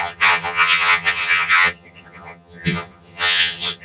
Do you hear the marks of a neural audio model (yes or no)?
yes